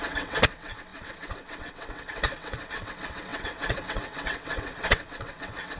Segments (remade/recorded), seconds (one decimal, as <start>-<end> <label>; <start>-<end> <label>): 0.0-5.8 remade